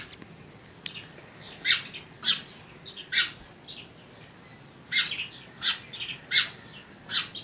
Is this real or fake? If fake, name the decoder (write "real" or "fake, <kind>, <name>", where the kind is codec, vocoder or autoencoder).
real